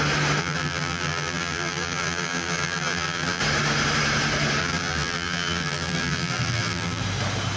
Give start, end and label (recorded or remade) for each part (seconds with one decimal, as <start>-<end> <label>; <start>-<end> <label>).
0.0-0.4 recorded; 0.4-3.4 remade; 3.4-4.6 recorded; 4.6-7.0 remade; 7.0-7.6 recorded